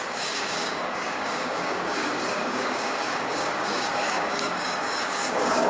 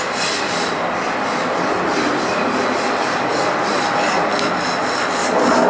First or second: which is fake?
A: first